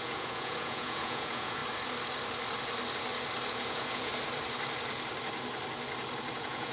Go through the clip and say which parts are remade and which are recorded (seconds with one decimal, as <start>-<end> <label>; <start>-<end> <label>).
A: 0.0-1.6 remade; 1.6-3.5 recorded; 3.5-4.1 remade; 4.1-6.3 recorded; 6.3-6.7 remade